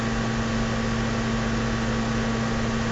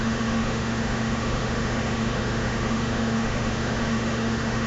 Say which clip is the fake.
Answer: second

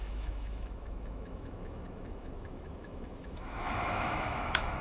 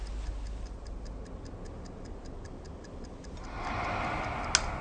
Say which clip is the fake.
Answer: first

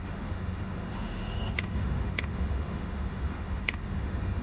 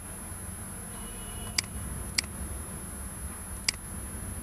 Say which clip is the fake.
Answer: first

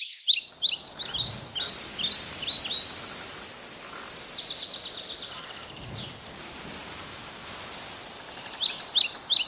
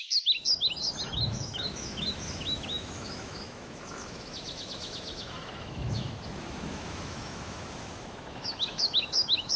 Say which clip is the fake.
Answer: second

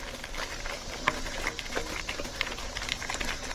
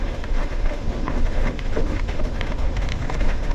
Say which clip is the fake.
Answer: second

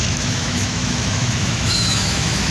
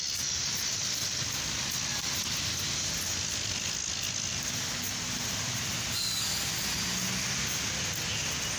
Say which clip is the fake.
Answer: first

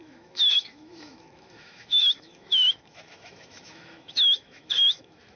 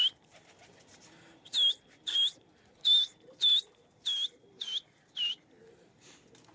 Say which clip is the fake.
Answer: first